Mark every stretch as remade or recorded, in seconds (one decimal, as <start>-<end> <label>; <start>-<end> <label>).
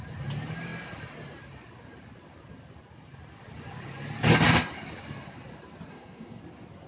0.0-5.9 recorded; 5.9-6.4 remade; 6.4-6.9 recorded